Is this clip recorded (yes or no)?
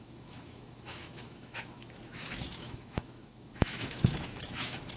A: no